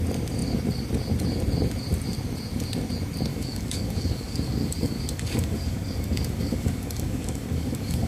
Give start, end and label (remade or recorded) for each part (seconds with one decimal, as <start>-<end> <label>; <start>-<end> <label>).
0.0-3.3 recorded; 3.3-8.1 remade